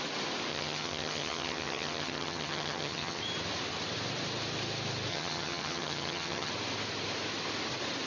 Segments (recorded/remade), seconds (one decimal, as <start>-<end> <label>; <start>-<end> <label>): 0.0-0.5 recorded; 0.5-3.2 remade; 3.2-5.1 recorded; 5.1-6.5 remade; 6.5-8.1 recorded